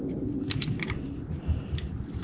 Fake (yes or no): no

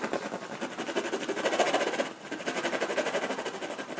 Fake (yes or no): no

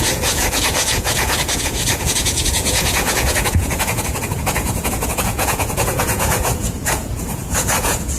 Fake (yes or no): yes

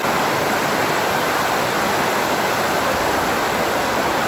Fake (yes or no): no